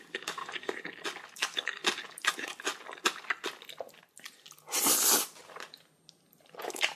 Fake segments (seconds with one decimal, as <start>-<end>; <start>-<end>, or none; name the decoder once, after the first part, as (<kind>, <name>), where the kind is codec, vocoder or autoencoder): 0.0-0.4 (codec, DAC); 1.3-1.8; 2.3-2.7; 6.6-7.0